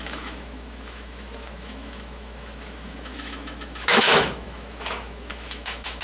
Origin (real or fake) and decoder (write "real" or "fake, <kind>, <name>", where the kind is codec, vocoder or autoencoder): fake, autoencoder, DAC-VAE